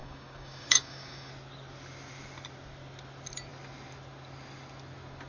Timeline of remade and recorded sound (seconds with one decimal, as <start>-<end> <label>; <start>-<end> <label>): 0.0-1.3 remade; 1.3-5.3 recorded

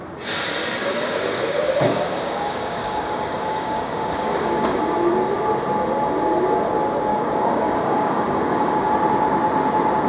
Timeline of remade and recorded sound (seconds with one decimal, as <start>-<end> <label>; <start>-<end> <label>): 0.0-0.8 recorded; 0.8-4.8 remade; 4.8-7.1 recorded; 7.1-8.9 remade; 8.9-10.1 recorded

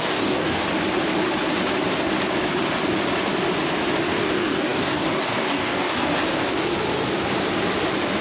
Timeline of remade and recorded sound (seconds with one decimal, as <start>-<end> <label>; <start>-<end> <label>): 0.0-0.6 remade; 0.6-4.2 recorded; 4.2-6.1 remade; 6.1-8.2 recorded